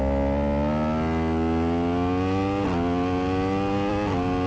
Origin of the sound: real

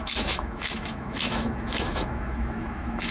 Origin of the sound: fake